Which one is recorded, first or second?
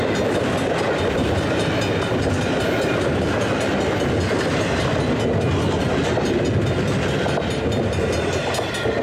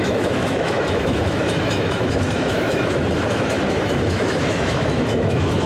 first